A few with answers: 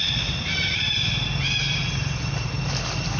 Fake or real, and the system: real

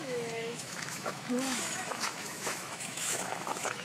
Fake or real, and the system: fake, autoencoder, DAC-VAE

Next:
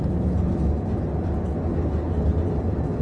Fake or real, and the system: real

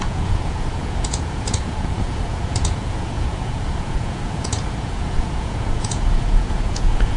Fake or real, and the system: fake, vocoder, Vocos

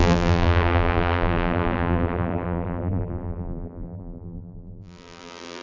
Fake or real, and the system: fake, vocoder, BigVGAN v2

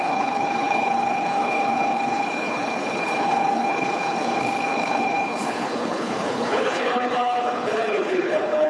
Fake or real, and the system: fake, codec, HILCodec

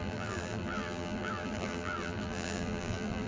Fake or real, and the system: fake, vocoder, BigVGAN v2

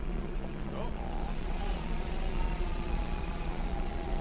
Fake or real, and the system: fake, vocoder, Vocos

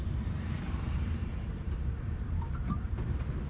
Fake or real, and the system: fake, vocoder, BigVGAN v2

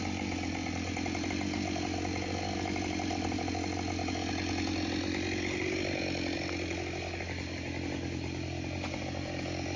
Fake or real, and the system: real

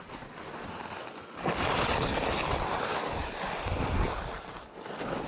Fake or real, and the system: real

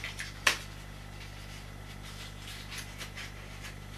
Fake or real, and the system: real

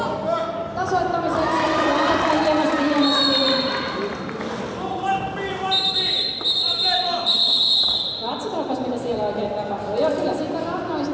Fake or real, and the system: real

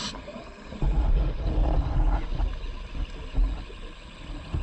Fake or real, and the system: real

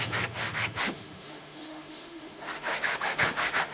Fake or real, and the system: fake, autoencoder, DAC-VAE